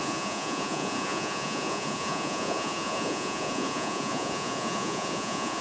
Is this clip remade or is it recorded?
remade